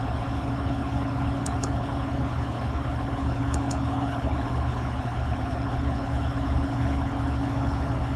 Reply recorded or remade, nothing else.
remade